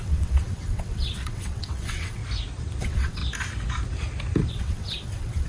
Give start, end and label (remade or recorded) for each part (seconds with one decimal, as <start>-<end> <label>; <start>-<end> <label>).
0.0-2.2 remade; 2.2-2.8 recorded; 2.8-3.2 remade; 3.2-4.5 recorded; 4.5-5.5 remade